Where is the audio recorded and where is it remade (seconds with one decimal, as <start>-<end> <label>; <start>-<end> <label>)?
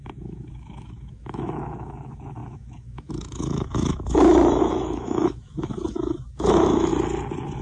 0.0-6.9 remade; 6.9-7.6 recorded